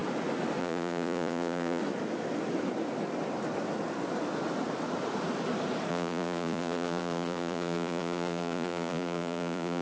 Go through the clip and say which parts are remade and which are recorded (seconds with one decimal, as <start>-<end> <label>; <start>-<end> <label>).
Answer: 0.0-0.6 recorded; 0.6-1.8 remade; 1.8-5.9 recorded; 5.9-9.8 remade